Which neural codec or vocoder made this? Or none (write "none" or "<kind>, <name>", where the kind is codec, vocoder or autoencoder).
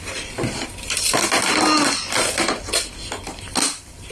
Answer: none